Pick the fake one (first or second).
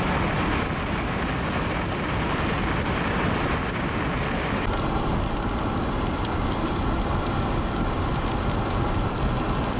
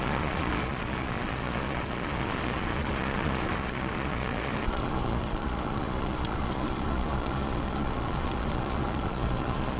second